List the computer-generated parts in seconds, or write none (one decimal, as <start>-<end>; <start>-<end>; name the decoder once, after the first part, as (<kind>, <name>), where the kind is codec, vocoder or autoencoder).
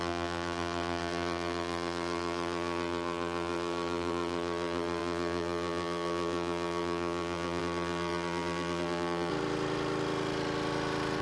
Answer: 0.0-9.3 (vocoder, BigVGAN v2)